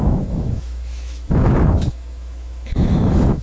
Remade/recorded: remade